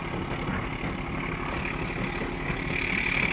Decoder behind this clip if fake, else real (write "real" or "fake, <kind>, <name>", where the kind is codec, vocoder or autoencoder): real